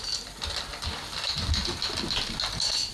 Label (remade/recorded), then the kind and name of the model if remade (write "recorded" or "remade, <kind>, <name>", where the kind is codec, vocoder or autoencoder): recorded